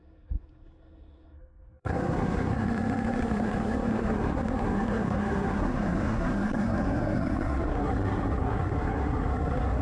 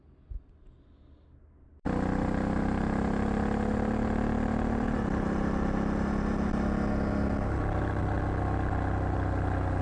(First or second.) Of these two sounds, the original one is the second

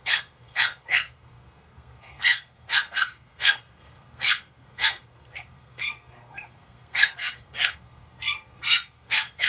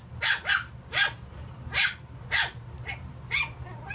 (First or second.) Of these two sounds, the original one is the second